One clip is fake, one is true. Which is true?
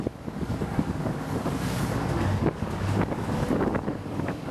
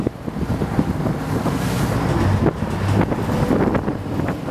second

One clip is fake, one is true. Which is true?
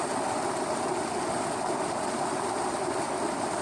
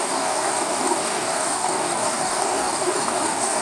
first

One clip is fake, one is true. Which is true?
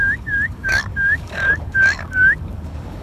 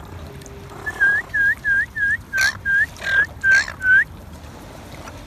second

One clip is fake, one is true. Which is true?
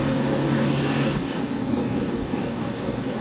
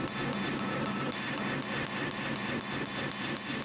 second